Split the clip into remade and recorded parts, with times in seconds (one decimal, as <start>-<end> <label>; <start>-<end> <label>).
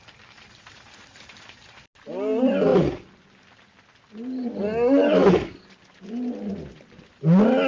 0.0-7.7 recorded